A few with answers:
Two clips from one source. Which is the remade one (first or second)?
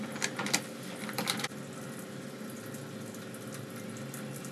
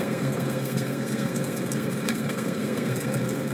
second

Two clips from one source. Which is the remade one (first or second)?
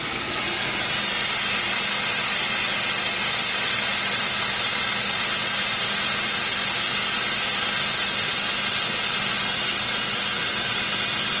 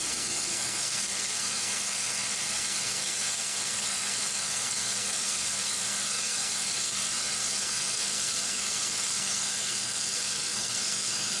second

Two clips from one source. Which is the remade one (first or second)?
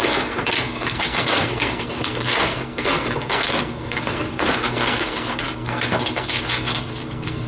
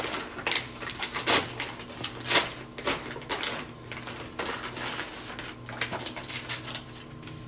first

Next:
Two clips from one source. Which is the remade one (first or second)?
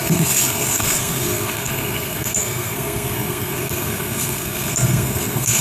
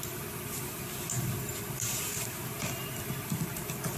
first